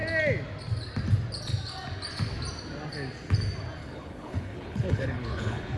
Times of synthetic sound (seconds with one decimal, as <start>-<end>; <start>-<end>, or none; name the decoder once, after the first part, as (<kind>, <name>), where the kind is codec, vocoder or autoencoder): 3.8-5.8 (codec, HILCodec)